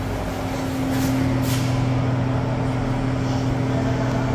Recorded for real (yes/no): yes